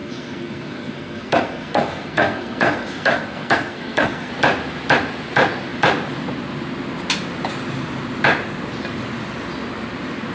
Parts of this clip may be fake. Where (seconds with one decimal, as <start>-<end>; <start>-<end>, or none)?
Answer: 0.0-4.3